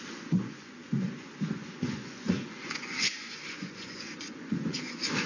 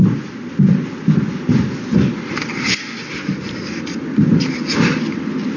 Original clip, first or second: second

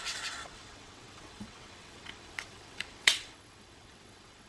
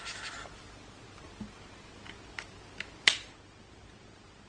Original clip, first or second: second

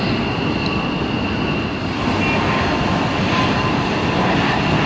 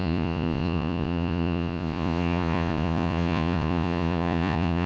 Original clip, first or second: first